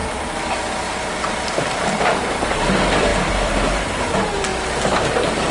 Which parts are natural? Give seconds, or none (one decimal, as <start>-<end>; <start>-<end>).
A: 0.0-1.8; 4.5-5.5